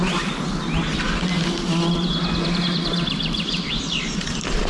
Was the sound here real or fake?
real